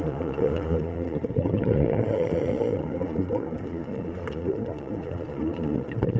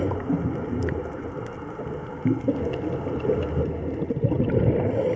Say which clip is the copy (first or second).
first